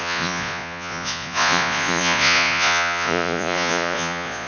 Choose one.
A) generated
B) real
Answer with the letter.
A